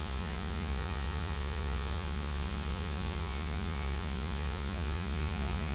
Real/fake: fake